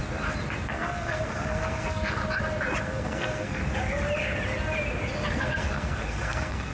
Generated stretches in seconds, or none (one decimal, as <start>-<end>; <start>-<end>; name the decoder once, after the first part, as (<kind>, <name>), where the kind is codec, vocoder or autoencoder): 0.7-2.2 (codec, SNAC); 2.8-3.6; 5.3-6.7